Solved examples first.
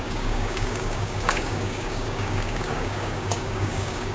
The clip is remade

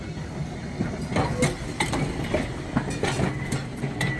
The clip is recorded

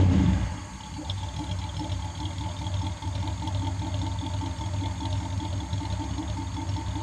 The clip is recorded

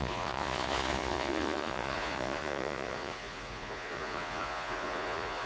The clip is remade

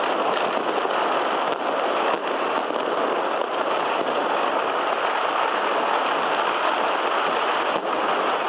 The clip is recorded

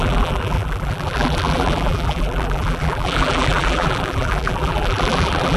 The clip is remade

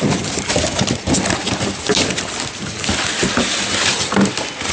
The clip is recorded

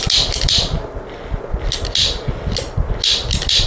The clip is recorded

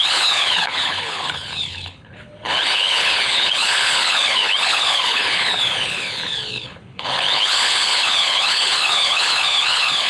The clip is remade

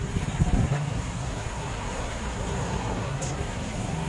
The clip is remade